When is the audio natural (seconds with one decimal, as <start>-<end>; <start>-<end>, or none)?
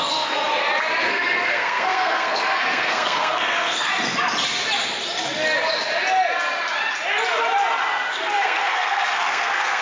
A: 0.4-1.0; 3.9-8.1